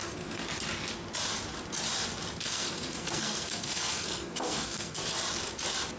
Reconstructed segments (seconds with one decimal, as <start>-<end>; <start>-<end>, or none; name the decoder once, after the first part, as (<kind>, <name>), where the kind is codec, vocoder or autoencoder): 0.0-0.4 (codec, SNAC); 2.4-5.0